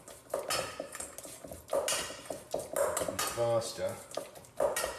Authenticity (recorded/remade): recorded